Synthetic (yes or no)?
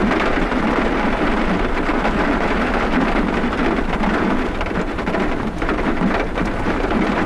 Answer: no